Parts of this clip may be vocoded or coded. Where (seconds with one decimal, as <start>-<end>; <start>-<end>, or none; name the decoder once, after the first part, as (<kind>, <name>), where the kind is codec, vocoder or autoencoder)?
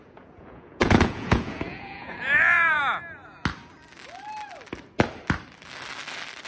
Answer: 0.0-2.8 (vocoder, Vocos)